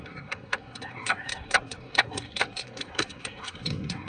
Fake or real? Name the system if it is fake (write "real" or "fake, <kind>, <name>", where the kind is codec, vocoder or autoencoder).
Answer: fake, codec, SNAC